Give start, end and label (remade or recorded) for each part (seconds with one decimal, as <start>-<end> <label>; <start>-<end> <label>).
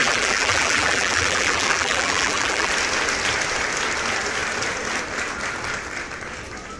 0.0-2.7 remade; 2.7-6.8 recorded